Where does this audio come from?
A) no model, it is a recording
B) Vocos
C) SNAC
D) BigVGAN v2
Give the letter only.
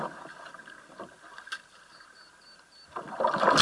A